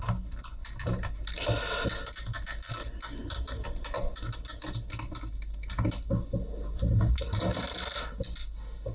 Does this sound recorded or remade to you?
recorded